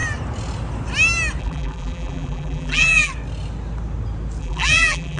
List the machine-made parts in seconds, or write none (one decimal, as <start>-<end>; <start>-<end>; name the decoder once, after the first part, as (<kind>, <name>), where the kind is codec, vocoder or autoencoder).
1.4-3.1 (vocoder, BigVGAN v2); 4.4-5.2